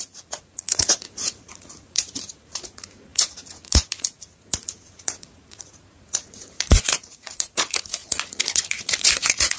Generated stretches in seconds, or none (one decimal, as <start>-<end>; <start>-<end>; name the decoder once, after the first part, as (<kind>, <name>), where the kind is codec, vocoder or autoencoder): 0.0-9.6 (vocoder, Vocos)